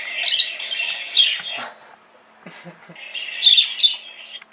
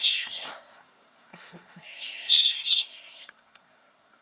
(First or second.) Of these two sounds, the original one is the first